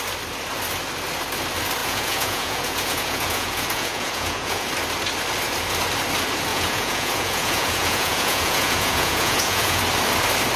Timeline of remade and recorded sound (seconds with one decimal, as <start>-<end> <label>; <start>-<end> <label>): 0.0-1.8 recorded; 1.8-4.7 remade; 4.7-6.5 recorded; 6.5-9.8 remade; 9.8-10.6 recorded